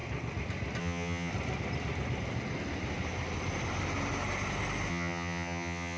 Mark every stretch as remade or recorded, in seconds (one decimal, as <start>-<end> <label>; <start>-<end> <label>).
0.0-0.8 recorded; 0.8-1.3 remade; 1.3-4.9 recorded; 4.9-6.0 remade